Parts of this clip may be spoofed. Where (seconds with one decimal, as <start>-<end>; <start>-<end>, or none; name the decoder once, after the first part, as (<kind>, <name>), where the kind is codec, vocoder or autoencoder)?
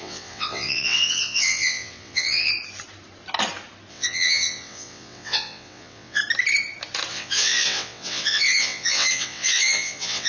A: 0.0-2.5 (vocoder, WaveNeXt); 3.9-6.2; 7.1-10.3